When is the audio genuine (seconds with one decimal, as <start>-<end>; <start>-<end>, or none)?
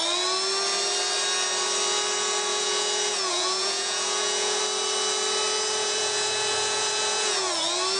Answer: 0.0-2.5; 4.6-5.8; 7.5-8.0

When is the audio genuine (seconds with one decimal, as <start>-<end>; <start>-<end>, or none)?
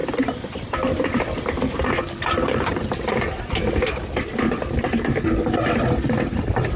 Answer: 0.0-6.8